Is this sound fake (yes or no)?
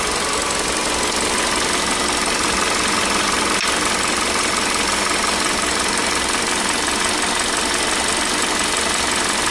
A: no